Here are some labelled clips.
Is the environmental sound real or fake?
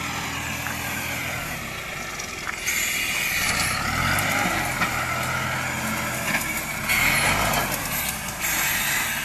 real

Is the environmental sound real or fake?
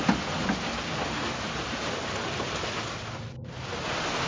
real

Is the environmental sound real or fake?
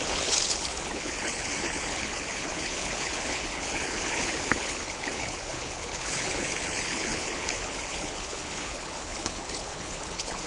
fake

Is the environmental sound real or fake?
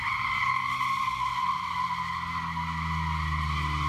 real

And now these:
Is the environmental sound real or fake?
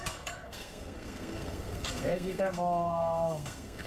fake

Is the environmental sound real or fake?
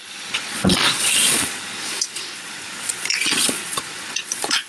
fake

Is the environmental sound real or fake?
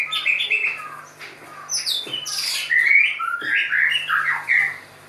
real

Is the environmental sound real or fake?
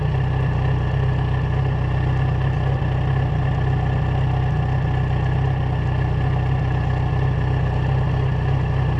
real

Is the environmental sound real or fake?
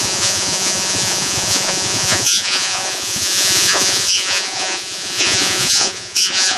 fake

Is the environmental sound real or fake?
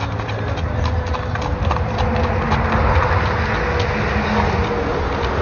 real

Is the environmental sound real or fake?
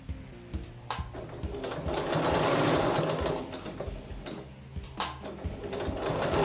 real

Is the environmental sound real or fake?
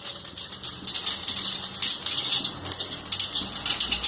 real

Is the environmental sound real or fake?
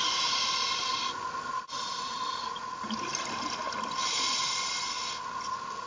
real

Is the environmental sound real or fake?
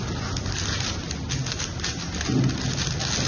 real